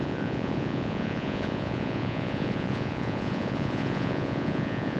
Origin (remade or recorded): remade